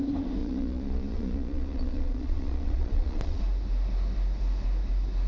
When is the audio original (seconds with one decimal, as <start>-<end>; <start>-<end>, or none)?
0.0-0.4; 3.4-5.3